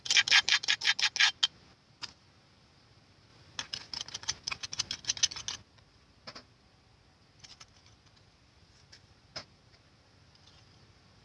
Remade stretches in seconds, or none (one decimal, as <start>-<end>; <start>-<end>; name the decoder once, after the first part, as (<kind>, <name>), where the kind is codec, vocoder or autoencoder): none